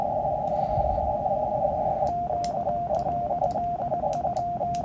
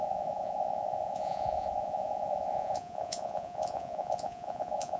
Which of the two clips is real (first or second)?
first